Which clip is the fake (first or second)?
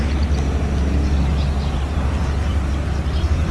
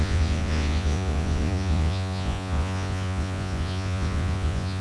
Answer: second